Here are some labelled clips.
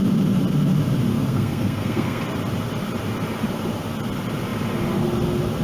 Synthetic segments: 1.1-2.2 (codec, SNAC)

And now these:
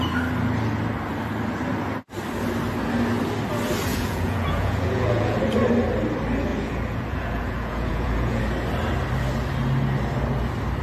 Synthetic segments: 3.9-5.4 (vocoder, Vocos); 6.5-8.4